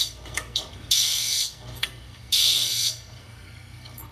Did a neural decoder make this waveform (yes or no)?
yes